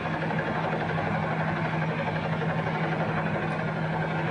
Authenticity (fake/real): real